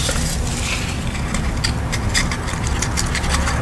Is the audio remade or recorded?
recorded